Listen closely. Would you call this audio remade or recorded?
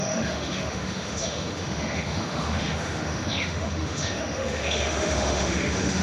remade